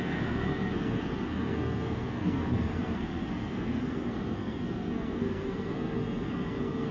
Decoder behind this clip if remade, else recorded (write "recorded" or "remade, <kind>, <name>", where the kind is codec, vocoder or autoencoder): remade, codec, SNAC